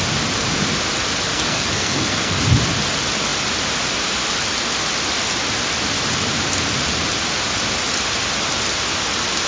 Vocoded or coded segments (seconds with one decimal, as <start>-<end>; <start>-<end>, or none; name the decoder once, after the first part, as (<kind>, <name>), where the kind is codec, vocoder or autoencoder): 1.3-2.4 (codec, SNAC)